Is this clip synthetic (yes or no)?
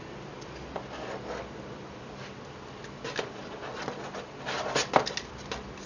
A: no